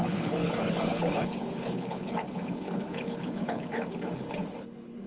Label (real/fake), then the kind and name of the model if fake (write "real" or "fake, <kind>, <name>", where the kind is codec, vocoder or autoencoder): fake, codec, HILCodec